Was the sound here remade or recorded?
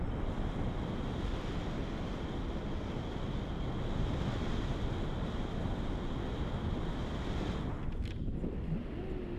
recorded